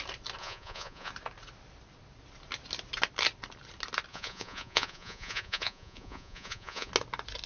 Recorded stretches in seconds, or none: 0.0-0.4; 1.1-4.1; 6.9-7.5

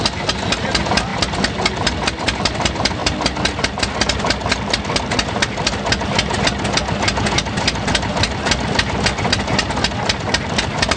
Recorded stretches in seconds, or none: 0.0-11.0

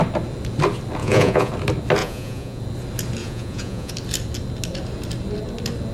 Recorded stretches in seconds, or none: 0.0-1.0; 1.5-2.0; 2.6-3.2; 3.9-5.9